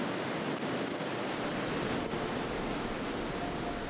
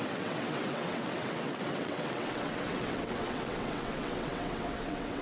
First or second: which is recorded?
first